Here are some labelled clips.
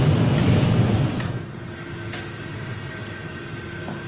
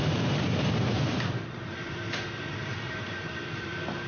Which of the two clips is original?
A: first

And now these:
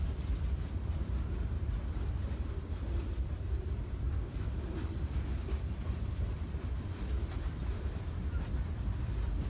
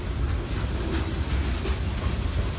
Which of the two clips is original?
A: second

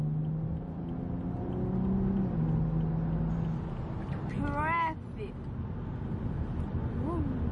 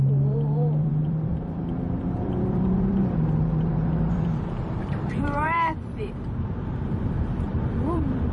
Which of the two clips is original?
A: first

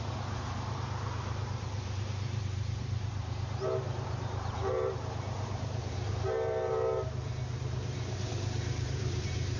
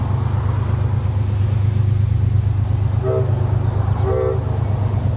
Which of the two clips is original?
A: second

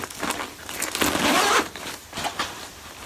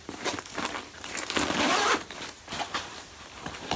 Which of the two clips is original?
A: first